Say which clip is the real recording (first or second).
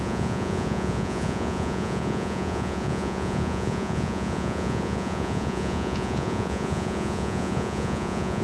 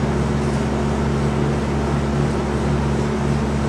second